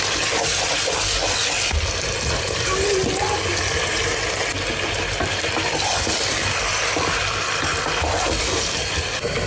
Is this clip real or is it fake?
real